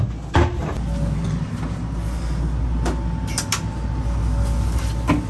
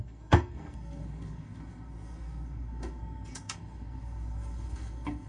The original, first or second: first